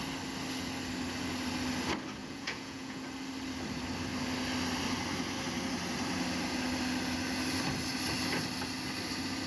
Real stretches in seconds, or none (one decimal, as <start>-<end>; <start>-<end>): 0.0-2.2; 3.0-9.5